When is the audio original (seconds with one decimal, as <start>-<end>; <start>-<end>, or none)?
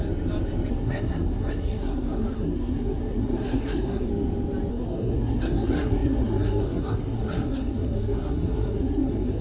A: 0.0-0.7; 4.1-4.7